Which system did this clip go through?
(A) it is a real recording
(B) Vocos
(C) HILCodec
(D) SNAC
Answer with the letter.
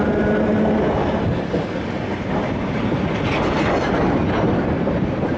A